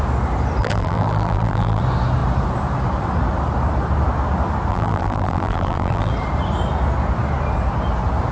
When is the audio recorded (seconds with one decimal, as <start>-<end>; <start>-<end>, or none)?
0.0-0.6; 1.8-4.7; 6.1-8.3